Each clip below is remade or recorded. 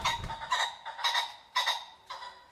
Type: recorded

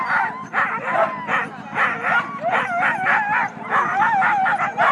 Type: recorded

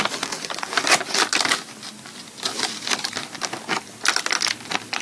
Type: recorded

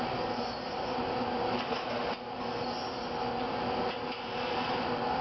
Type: recorded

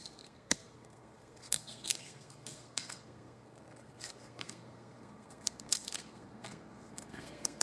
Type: remade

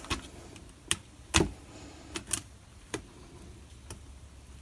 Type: recorded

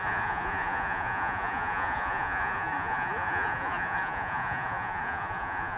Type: remade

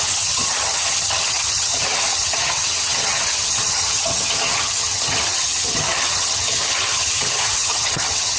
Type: remade